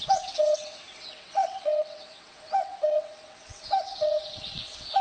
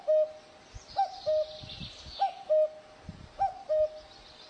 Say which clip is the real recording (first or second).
second